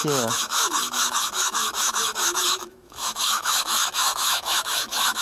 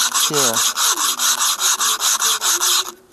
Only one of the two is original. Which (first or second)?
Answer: second